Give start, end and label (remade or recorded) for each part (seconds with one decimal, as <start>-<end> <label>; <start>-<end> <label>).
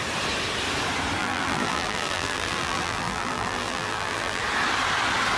0.0-1.2 recorded; 1.2-4.4 remade; 4.4-5.4 recorded